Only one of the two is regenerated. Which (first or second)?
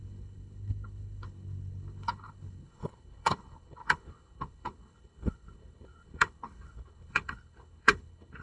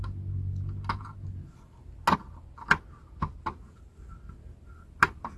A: first